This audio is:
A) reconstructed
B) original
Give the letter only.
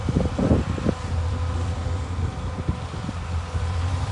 A